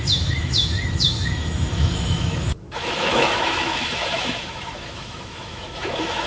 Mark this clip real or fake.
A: fake